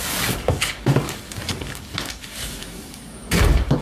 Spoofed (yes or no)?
yes